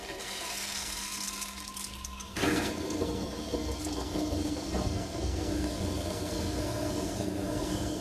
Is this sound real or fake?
fake